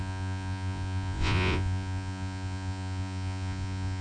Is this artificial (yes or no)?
yes